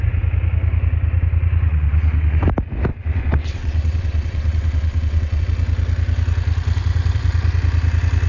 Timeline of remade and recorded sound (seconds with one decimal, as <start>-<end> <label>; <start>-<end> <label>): 0.0-1.7 recorded; 1.7-2.4 remade; 2.4-2.9 recorded; 2.9-5.4 remade; 5.4-8.3 recorded